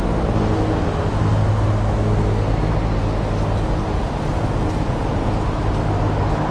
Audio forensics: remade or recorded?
recorded